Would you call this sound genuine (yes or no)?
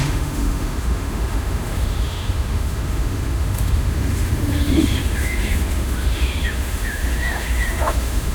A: no